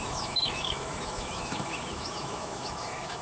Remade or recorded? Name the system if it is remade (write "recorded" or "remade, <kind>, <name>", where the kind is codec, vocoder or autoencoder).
remade, autoencoder, DAC-VAE